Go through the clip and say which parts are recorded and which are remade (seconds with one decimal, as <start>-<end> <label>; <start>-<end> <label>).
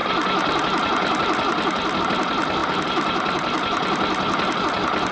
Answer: 0.0-5.1 recorded